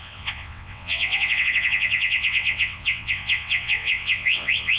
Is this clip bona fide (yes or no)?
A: no